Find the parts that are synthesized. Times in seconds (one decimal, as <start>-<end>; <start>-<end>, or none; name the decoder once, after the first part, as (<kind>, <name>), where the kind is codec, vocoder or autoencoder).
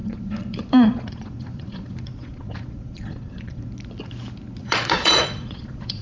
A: 0.0-3.6 (vocoder, Vocos); 4.6-6.0